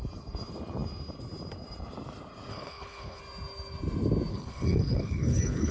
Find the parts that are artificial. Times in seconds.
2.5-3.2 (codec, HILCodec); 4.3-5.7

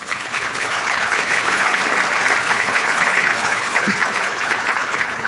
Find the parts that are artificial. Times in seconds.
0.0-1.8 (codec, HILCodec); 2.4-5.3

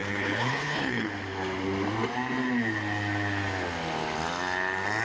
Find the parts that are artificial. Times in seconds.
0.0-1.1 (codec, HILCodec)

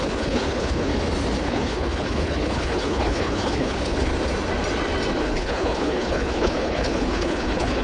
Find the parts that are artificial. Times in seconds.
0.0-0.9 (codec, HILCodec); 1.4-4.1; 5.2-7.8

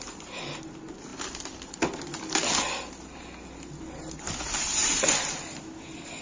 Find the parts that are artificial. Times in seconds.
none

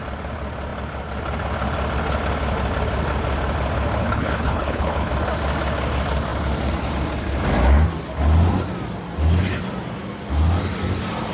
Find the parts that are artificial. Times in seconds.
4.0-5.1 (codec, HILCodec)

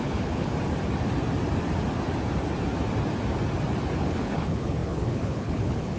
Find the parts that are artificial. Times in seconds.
0.0-0.5 (codec, HILCodec); 4.0-6.0